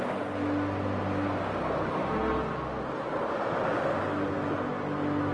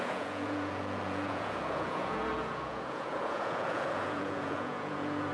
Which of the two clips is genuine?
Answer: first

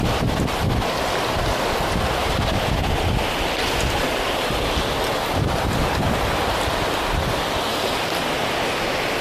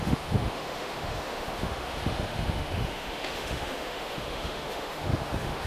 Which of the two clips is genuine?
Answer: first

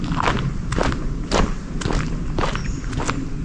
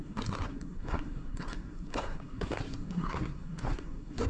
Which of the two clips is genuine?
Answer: first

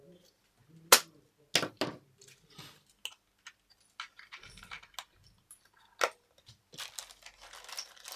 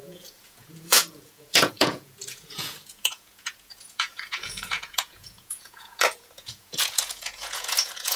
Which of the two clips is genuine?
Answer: first